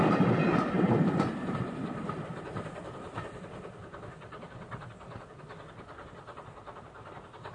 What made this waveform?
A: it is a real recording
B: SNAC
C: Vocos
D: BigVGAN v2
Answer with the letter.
A